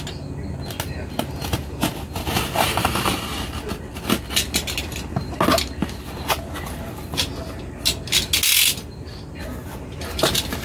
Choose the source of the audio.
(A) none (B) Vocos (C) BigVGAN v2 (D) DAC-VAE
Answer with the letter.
A